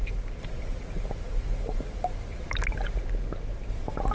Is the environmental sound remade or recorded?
recorded